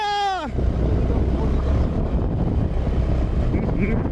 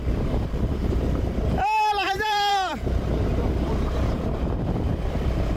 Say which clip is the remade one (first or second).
second